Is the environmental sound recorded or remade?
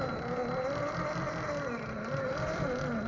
recorded